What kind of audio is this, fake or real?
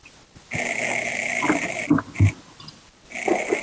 real